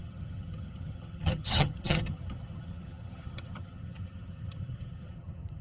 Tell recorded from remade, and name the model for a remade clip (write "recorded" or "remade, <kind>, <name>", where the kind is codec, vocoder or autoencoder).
remade, vocoder, HiFi-GAN